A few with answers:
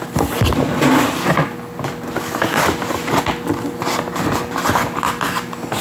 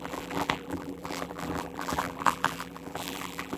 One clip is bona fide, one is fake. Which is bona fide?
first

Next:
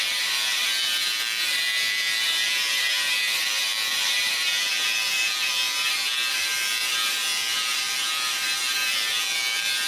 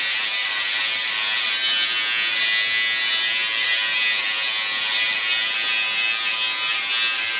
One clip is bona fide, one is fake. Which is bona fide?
second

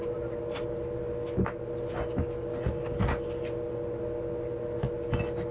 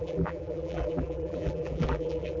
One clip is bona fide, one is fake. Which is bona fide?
first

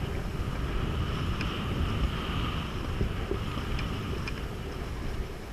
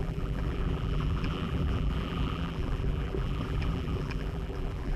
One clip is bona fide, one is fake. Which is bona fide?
first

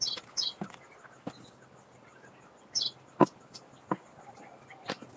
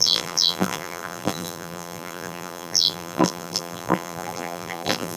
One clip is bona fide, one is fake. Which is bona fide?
first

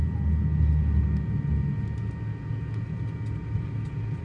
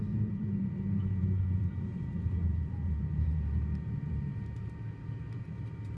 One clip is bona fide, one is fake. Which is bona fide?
first